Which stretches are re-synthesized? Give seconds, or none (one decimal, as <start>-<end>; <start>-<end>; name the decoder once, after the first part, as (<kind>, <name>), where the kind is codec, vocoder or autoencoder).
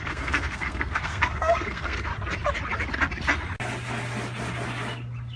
0.0-2.1 (codec, SNAC)